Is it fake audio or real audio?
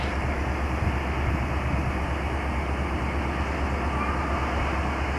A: real